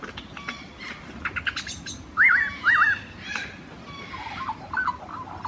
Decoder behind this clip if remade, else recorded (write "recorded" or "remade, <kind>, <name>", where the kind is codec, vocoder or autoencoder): recorded